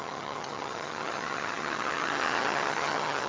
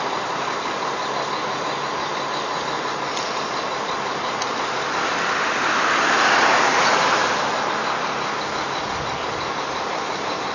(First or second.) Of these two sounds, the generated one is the first